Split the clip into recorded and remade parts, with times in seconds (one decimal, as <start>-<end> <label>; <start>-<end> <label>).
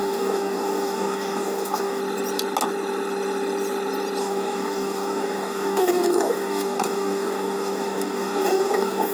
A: 0.0-2.0 remade; 2.0-4.2 recorded; 4.2-9.1 remade